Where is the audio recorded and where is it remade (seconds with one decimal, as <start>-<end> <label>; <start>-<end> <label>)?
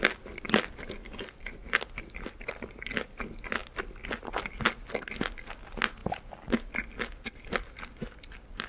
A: 0.0-8.7 recorded